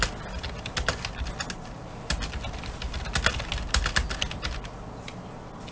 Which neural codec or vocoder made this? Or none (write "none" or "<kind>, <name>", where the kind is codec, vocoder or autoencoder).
none